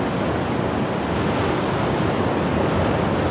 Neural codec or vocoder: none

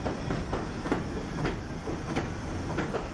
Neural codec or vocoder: none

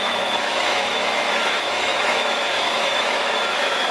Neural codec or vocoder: autoencoder, DAC-VAE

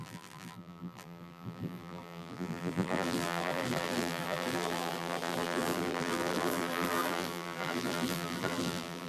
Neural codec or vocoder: vocoder, BigVGAN v2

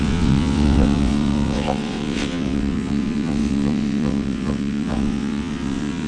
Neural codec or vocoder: vocoder, WaveNeXt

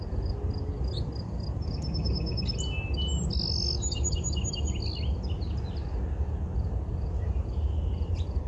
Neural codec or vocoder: none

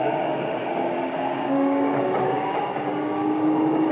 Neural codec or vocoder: codec, DAC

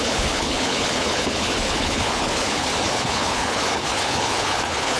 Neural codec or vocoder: codec, HILCodec